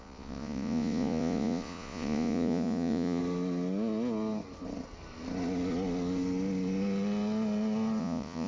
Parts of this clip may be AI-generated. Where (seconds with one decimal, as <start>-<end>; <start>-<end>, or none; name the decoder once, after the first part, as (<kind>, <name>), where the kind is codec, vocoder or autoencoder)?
0.0-3.2 (vocoder, Vocos); 8.0-8.5